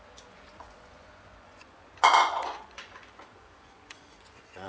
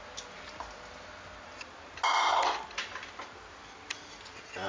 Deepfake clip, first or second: first